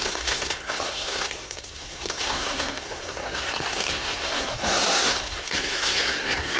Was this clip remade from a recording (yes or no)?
yes